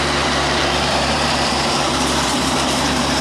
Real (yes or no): no